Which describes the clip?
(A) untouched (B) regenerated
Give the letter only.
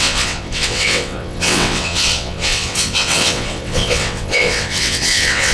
B